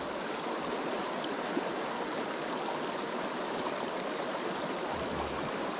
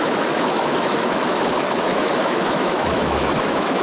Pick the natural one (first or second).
first